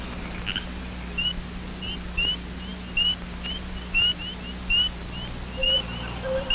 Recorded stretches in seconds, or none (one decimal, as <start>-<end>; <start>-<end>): 0.0-6.5